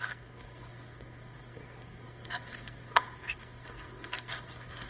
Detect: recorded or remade remade